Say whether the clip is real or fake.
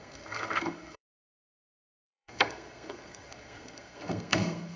fake